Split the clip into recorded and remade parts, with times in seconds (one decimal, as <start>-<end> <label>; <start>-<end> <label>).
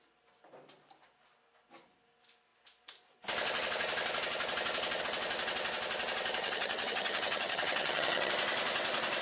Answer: 0.0-6.4 recorded; 6.4-8.3 remade; 8.3-9.2 recorded